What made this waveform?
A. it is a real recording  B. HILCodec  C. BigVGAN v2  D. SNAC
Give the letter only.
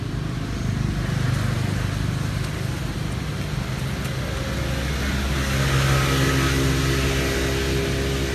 A